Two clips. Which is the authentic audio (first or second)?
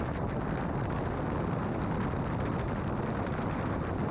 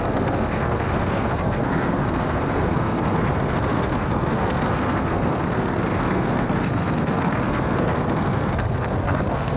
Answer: first